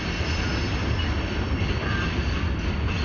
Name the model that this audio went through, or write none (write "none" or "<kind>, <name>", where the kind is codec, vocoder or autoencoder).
none